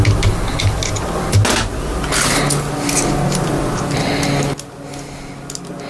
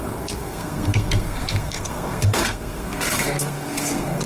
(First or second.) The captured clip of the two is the first